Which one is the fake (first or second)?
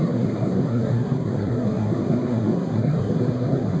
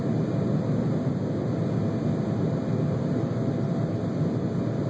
first